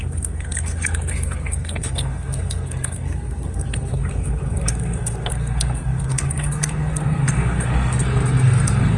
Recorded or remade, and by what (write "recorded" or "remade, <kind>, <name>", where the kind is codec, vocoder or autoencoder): remade, codec, SNAC